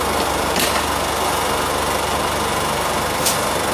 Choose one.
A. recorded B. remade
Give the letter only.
A